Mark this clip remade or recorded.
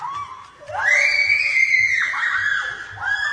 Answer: recorded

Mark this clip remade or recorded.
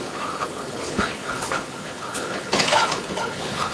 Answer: remade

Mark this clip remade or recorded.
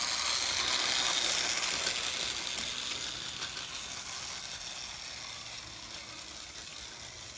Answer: recorded